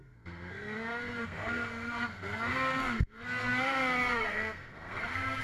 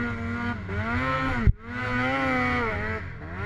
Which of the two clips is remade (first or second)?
first